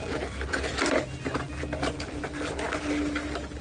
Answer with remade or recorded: recorded